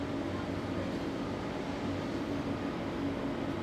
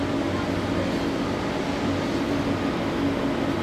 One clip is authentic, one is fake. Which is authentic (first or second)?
second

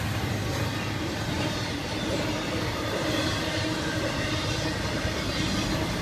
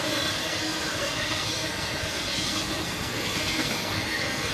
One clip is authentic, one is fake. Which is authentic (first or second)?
first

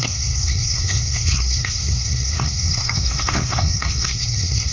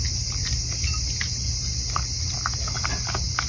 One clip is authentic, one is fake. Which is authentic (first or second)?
second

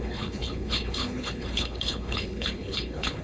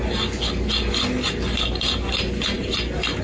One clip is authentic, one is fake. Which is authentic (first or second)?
second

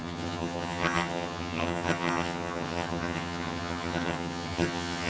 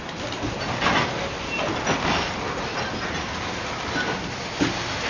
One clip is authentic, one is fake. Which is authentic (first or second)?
second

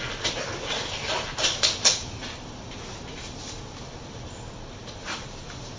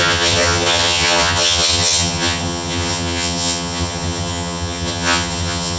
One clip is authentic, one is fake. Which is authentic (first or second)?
first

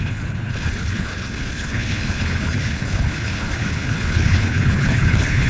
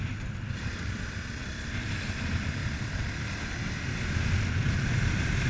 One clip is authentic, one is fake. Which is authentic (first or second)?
second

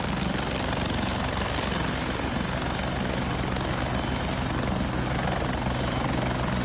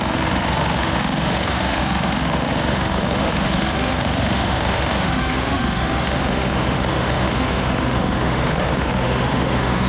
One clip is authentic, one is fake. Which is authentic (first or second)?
first